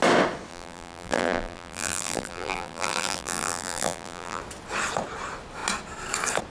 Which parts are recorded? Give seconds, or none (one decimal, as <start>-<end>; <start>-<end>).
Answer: 0.0-0.5; 4.4-6.5